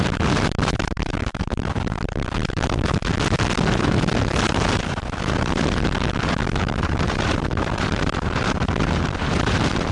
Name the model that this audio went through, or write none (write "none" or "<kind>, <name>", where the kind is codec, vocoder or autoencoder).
vocoder, BigVGAN v2